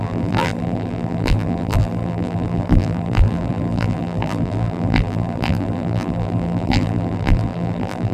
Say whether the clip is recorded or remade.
remade